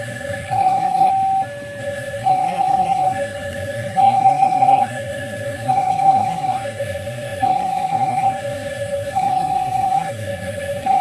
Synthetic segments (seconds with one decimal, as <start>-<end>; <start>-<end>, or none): 0.0-1.1; 1.8-11.0